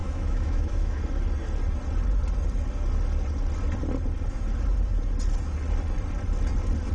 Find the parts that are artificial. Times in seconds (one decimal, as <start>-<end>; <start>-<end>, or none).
0.0-1.0